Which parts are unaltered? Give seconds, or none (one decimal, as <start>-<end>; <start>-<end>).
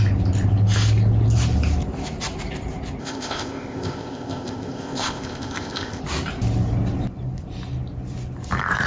0.0-3.0; 6.0-8.9